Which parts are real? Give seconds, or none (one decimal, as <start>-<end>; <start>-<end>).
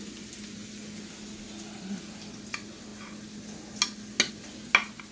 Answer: 0.0-5.1